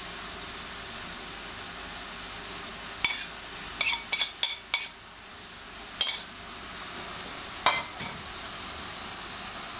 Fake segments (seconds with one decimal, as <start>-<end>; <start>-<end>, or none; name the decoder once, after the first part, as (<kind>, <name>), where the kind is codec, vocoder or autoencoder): none